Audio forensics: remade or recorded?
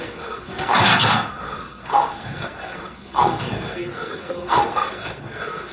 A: remade